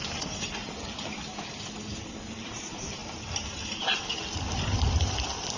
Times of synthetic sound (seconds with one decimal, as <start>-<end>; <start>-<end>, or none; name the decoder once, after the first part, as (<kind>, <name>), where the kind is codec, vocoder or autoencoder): 0.0-0.6 (vocoder, BigVGAN v2); 2.4-5.6